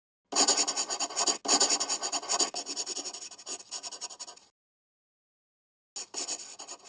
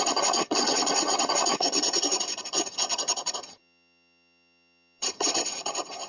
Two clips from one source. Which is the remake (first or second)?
second